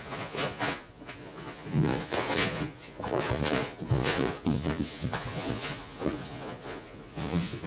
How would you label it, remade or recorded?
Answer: remade